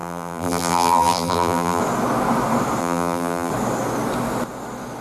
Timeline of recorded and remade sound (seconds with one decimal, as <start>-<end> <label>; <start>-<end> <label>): 0.0-1.8 remade; 1.8-2.8 recorded; 2.8-3.5 remade; 3.5-5.0 recorded